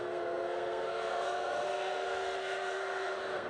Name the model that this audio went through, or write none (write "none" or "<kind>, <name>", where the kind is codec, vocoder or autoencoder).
codec, SNAC